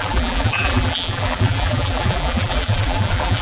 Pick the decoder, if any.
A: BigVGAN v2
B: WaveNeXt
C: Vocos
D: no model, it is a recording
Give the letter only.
A